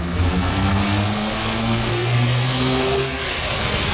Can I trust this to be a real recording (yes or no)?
no